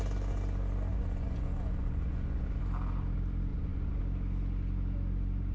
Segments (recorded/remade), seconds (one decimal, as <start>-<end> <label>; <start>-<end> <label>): 0.0-0.9 recorded; 0.9-2.6 remade; 2.6-3.5 recorded; 3.5-4.0 remade; 4.0-5.5 recorded